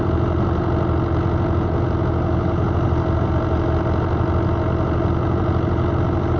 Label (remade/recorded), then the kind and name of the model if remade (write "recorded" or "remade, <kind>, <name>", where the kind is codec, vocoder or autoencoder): recorded